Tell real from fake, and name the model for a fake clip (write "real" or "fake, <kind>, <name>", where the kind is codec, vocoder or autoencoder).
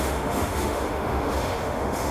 fake, autoencoder, DAC-VAE